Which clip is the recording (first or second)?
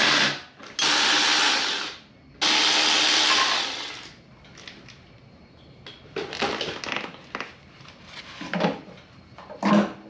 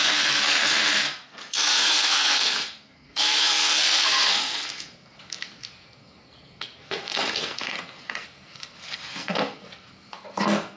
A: first